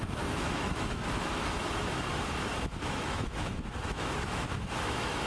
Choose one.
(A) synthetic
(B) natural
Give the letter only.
A